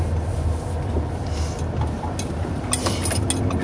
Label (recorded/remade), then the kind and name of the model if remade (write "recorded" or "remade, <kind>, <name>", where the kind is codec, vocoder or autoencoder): recorded